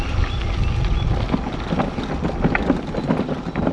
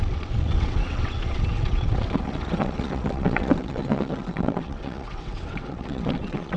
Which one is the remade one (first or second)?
second